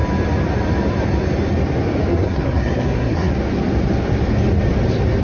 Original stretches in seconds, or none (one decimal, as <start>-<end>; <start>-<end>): 0.0-2.1; 3.3-5.2